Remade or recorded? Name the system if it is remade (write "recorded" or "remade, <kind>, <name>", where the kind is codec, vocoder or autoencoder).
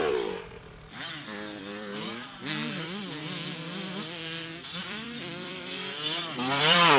remade, vocoder, BigVGAN v2